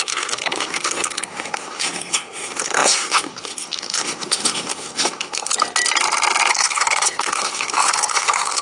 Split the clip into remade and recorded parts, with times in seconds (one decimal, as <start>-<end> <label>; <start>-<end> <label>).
0.0-5.5 remade; 5.5-6.5 recorded; 6.5-8.6 remade